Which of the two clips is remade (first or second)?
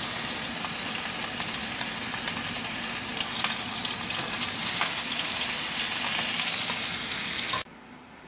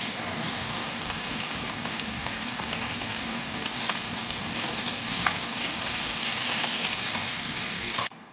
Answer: second